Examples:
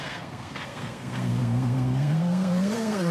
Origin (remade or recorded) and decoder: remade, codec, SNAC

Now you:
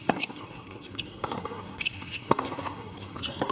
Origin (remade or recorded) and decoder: remade, codec, SNAC